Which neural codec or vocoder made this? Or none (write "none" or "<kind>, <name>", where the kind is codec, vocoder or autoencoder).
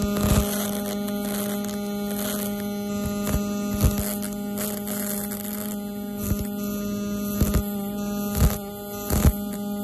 none